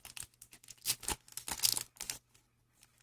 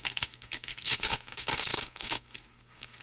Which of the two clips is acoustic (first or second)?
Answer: first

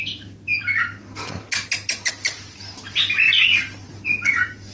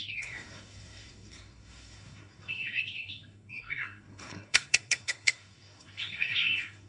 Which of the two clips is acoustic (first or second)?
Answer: first